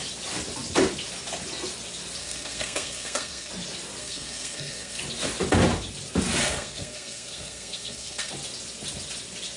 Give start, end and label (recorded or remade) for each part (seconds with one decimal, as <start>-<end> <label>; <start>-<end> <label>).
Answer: 0.0-2.2 recorded; 2.2-3.5 remade; 3.5-4.0 recorded; 4.0-5.0 remade; 5.0-6.4 recorded; 6.4-8.3 remade; 8.3-9.6 recorded